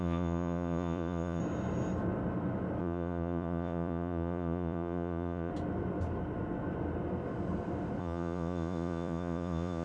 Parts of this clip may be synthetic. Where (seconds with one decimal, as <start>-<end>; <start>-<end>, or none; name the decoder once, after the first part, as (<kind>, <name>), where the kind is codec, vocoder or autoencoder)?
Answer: 0.0-1.4 (vocoder, Vocos); 2.8-5.5; 8.0-9.8